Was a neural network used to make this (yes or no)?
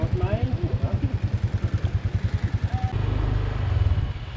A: no